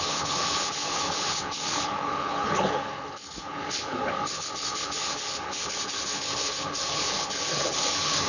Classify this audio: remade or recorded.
remade